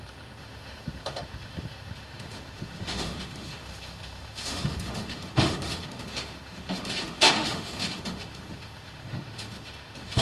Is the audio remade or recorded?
remade